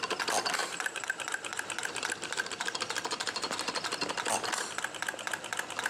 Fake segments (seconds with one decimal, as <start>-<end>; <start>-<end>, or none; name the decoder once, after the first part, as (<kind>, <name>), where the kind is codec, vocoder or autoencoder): 0.6-4.1 (vocoder, BigVGAN v2)